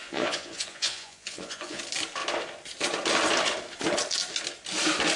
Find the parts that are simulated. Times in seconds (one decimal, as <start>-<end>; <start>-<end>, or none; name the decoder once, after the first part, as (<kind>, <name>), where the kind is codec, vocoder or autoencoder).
0.0-1.8 (vocoder, Vocos)